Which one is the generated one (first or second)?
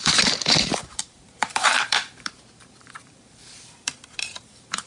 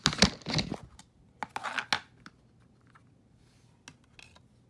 first